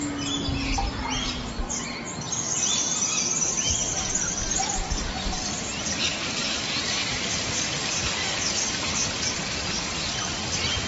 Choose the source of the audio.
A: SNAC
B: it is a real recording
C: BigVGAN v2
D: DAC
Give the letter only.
B